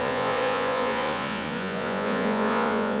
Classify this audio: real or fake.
fake